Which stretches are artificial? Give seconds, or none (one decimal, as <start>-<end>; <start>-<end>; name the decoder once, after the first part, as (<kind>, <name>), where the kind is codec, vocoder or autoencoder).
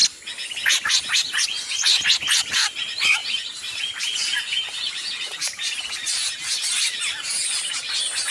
2.5-8.3 (vocoder, BigVGAN v2)